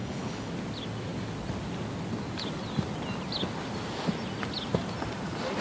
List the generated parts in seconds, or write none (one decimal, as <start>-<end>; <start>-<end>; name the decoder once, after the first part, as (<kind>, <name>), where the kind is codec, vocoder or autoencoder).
0.0-0.5 (codec, HILCodec)